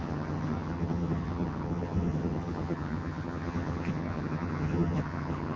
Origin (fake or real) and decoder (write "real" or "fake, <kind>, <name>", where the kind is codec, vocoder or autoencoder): fake, vocoder, HiFi-GAN